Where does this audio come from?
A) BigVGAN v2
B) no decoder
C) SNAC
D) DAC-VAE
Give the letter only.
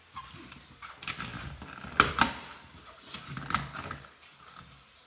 A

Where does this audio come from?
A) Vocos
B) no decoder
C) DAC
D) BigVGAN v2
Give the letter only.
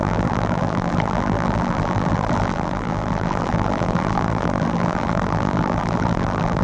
D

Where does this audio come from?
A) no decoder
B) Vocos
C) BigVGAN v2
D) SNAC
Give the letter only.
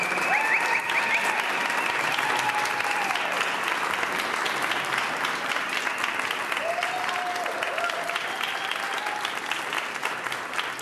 A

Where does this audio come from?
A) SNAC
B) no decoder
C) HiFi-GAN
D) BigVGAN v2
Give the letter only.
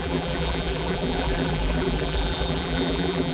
D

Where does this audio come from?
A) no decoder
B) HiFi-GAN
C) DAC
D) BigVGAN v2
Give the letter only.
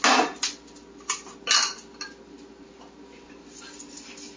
A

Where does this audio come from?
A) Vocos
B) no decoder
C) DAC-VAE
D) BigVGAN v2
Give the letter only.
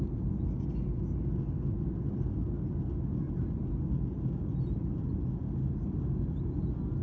B